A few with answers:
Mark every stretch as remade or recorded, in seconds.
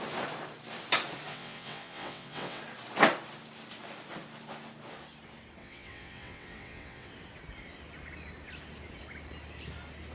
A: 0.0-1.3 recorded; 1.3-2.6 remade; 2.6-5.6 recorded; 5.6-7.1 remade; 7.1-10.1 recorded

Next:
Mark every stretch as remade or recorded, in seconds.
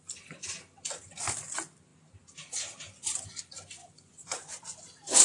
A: 0.0-3.8 recorded; 3.8-4.6 remade; 4.6-5.2 recorded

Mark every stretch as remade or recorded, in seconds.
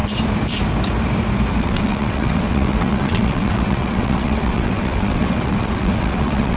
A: 0.0-1.6 recorded; 1.6-6.6 remade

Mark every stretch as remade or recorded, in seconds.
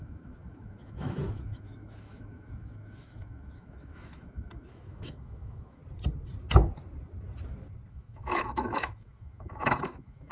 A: 0.0-5.8 remade; 5.8-7.9 recorded; 7.9-10.3 remade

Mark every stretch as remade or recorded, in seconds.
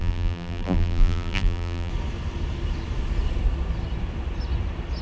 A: 0.0-1.9 remade; 1.9-5.0 recorded